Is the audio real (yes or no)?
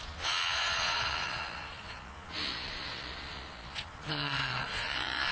no